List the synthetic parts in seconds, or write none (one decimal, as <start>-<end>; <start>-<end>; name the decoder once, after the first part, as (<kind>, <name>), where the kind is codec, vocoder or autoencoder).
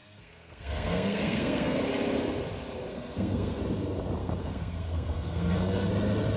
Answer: 0.0-1.8 (codec, SNAC); 2.9-3.6; 4.2-5.9